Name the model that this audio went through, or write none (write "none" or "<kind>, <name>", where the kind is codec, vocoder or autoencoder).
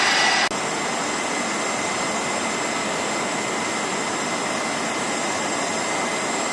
none